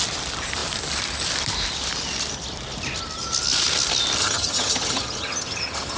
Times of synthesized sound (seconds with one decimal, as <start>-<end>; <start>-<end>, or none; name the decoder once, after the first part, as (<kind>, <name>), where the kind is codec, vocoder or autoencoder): 4.2-6.0 (vocoder, HiFi-GAN)